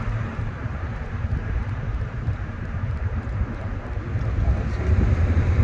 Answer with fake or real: fake